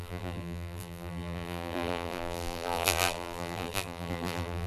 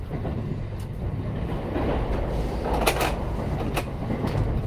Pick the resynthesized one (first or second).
first